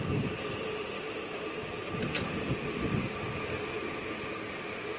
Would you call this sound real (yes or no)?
yes